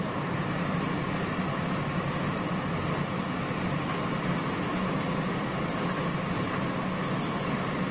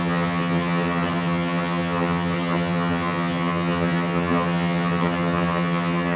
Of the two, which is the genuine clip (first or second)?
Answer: first